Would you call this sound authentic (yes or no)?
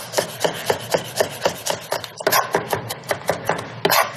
yes